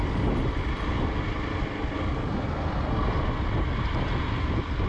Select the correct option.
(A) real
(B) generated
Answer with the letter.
A